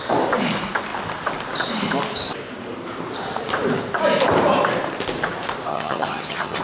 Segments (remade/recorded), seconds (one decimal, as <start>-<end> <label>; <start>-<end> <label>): 0.0-5.7 recorded; 5.7-6.6 remade